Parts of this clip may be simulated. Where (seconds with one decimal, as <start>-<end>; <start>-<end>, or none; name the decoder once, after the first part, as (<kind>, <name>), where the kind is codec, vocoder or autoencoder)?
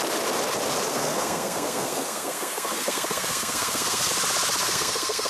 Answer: 0.9-4.1 (codec, SNAC); 4.6-5.3